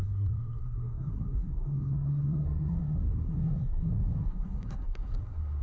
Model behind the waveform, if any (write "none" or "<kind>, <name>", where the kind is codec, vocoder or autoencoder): codec, SNAC